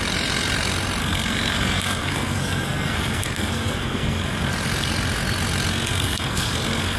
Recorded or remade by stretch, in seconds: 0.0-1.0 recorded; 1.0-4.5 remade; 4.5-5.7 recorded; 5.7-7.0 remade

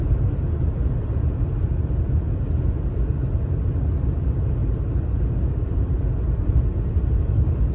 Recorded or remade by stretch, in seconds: 0.0-4.6 recorded; 4.6-5.2 remade; 5.2-7.7 recorded